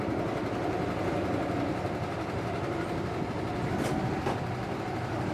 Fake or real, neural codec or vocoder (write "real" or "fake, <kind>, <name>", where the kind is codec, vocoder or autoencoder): real